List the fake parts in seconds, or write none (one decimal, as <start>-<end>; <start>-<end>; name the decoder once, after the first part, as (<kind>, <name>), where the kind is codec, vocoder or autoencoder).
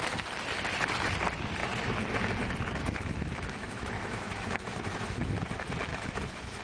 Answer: 2.8-5.4 (autoencoder, DAC-VAE); 5.9-6.6